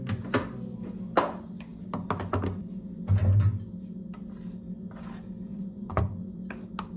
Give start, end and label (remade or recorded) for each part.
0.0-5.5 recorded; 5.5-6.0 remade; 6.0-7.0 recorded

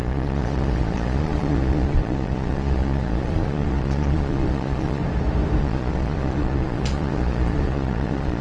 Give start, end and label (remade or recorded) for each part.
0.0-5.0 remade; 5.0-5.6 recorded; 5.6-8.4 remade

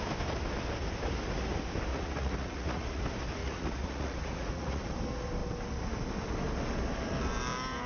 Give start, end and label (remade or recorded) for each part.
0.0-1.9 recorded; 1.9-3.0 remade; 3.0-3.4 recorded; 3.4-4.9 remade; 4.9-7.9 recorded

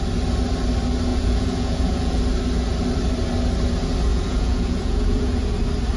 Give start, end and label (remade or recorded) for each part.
0.0-1.1 recorded; 1.1-2.2 remade; 2.2-4.1 recorded; 4.1-5.4 remade; 5.4-6.0 recorded

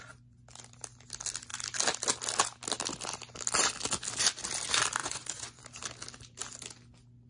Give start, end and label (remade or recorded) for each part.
0.0-5.0 recorded; 5.0-5.6 remade; 5.6-7.3 recorded

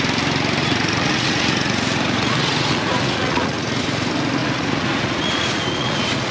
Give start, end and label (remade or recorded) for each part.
0.0-0.6 recorded; 0.6-3.8 remade; 3.8-4.4 recorded; 4.4-6.3 remade